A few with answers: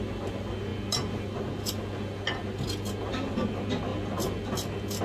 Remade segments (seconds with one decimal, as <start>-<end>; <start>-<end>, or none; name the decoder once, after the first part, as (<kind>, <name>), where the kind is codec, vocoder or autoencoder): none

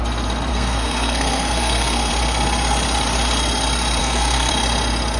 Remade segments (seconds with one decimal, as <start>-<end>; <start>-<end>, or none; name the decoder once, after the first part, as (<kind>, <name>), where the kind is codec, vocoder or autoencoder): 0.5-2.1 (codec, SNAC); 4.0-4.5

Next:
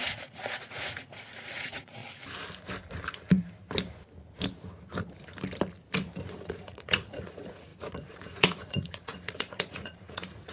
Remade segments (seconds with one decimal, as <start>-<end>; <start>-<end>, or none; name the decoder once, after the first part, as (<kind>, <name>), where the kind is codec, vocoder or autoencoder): 0.0-2.0 (vocoder, Vocos); 6.3-10.5

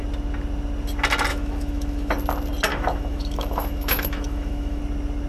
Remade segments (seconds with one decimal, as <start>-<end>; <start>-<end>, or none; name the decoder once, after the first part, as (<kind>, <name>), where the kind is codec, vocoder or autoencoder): 1.3-2.1 (autoencoder, DAC-VAE); 2.7-4.8